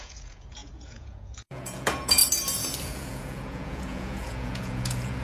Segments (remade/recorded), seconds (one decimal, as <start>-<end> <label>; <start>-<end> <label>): 0.0-2.2 remade; 2.2-2.8 recorded; 2.8-5.2 remade